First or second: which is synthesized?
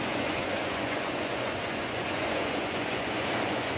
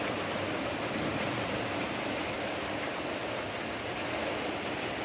first